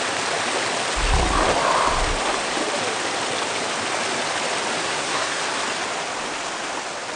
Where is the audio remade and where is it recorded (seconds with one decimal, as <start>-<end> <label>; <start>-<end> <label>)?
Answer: 0.0-4.8 recorded; 4.8-5.4 remade; 5.4-7.2 recorded

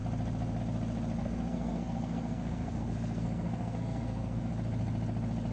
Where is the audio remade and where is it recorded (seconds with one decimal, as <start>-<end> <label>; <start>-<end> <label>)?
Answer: 0.0-1.2 recorded; 1.2-4.5 remade; 4.5-5.5 recorded

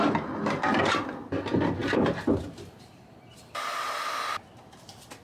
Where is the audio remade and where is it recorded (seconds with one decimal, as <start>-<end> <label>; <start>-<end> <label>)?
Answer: 0.0-5.2 recorded

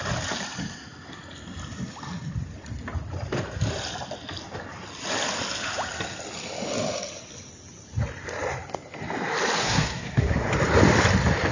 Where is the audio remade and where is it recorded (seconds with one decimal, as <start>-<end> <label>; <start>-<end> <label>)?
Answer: 0.0-9.6 recorded; 9.6-10.5 remade; 10.5-11.5 recorded

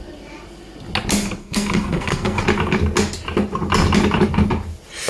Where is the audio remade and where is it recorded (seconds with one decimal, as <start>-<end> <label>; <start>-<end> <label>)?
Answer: 0.0-1.4 recorded; 1.4-2.4 remade; 2.4-5.1 recorded

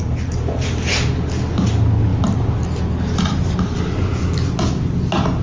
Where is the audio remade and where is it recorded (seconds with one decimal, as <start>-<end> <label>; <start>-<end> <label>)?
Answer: 0.0-5.4 recorded